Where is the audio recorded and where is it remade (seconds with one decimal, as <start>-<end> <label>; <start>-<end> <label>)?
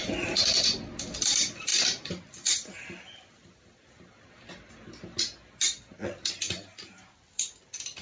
0.0-8.0 recorded